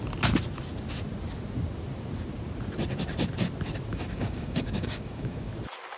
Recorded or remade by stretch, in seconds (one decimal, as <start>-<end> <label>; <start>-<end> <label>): 0.0-3.9 recorded; 3.9-5.5 remade; 5.5-6.0 recorded